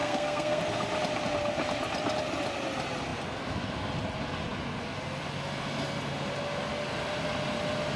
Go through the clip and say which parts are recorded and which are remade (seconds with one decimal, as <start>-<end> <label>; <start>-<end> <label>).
0.0-0.6 remade; 0.6-8.0 recorded